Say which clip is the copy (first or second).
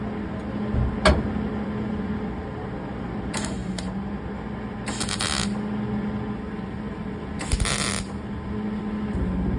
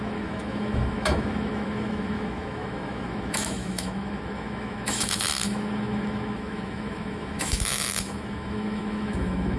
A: second